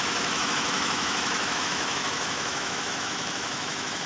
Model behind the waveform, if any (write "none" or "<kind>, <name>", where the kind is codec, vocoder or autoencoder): autoencoder, DAC-VAE